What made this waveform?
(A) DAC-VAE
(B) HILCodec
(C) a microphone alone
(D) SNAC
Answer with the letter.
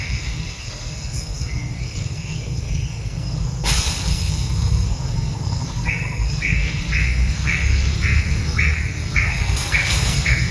D